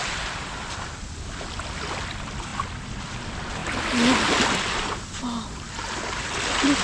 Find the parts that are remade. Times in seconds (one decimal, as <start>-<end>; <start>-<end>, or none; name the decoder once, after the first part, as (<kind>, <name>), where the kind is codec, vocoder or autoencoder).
none